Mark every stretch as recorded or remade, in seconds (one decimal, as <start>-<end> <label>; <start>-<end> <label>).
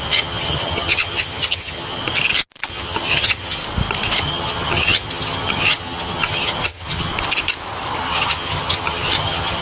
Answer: 0.0-2.0 remade; 2.0-2.7 recorded; 2.7-3.6 remade; 3.6-4.2 recorded; 4.2-7.1 remade; 7.1-8.0 recorded; 8.0-9.6 remade